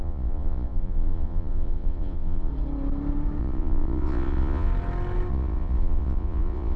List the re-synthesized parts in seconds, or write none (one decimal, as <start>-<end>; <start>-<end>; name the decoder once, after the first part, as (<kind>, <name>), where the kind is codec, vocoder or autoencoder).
0.0-2.5 (vocoder, Vocos); 3.4-4.7; 5.3-6.8